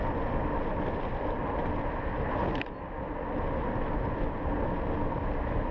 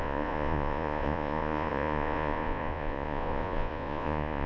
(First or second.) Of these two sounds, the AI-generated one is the second